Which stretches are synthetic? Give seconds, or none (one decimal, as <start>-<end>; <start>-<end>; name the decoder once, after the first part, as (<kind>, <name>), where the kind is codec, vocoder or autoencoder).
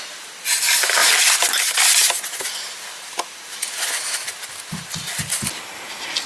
none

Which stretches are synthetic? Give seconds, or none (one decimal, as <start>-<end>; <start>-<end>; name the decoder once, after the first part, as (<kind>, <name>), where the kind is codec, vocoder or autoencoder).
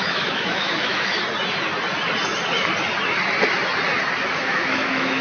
0.0-1.2 (autoencoder, DAC-VAE); 4.3-5.2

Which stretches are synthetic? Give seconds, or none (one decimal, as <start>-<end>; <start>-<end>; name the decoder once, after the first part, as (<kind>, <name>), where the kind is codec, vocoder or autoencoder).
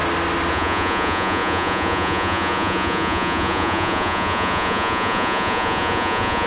0.5-6.5 (vocoder, Vocos)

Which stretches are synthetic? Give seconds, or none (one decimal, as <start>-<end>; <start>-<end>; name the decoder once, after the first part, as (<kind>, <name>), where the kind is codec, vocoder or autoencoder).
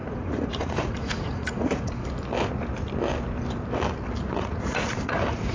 0.0-2.0 (vocoder, Vocos); 4.4-5.5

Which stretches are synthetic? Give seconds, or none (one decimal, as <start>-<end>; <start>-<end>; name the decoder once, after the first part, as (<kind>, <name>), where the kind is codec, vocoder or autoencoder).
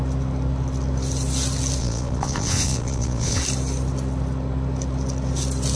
1.8-3.4 (vocoder, Vocos)